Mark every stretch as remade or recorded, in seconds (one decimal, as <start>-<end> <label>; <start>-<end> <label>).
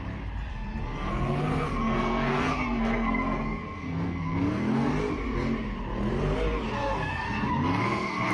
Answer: 0.0-0.5 recorded; 0.5-4.9 remade; 4.9-6.8 recorded; 6.8-8.3 remade